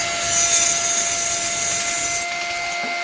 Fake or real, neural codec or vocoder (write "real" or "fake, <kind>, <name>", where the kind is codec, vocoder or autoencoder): real